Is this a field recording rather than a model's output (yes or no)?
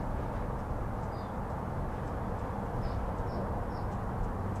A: yes